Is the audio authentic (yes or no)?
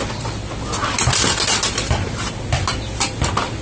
yes